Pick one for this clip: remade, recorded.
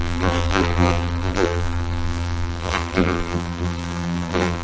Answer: remade